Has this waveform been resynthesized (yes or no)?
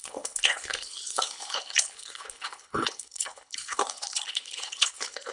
yes